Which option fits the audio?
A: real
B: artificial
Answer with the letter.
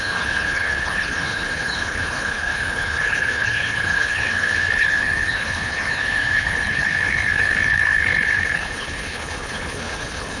B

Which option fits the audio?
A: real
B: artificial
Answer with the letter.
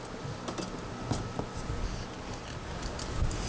A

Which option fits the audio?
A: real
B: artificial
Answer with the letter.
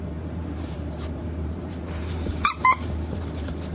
B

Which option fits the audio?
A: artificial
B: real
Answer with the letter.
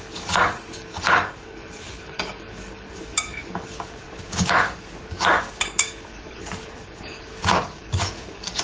A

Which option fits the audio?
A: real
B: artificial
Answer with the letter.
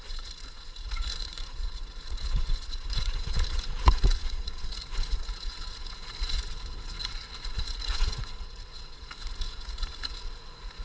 B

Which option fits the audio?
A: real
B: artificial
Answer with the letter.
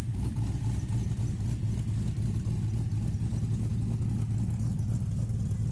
A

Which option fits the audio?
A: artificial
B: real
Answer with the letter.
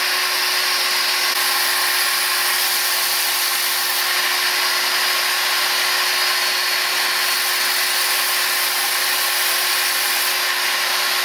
B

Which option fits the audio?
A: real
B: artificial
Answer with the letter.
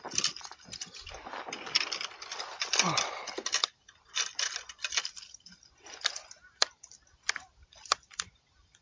B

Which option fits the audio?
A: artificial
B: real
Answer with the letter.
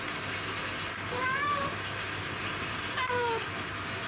B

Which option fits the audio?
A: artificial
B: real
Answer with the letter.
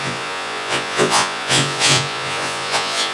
A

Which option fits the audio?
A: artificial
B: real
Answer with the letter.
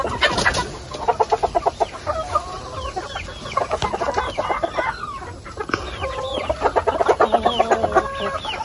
B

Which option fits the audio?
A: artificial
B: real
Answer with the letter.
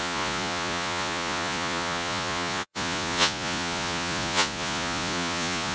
A